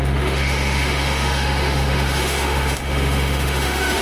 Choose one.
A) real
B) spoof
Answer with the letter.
B